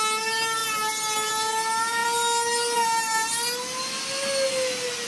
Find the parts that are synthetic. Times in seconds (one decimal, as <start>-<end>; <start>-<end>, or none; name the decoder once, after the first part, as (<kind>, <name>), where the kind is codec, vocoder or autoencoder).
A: none